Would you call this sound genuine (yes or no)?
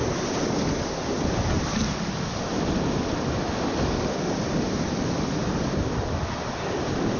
yes